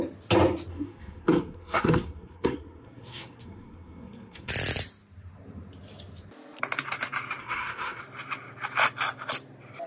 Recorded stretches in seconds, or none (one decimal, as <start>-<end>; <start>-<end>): 0.0-0.7; 4.5-7.4; 8.0-9.9